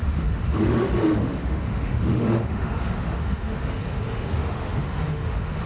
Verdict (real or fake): fake